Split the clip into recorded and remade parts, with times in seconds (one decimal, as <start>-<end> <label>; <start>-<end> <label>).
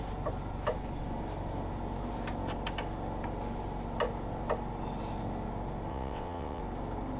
0.0-5.9 recorded; 5.9-6.6 remade; 6.6-7.2 recorded